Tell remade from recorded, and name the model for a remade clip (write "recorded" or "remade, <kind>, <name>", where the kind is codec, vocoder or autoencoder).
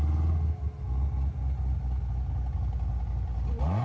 recorded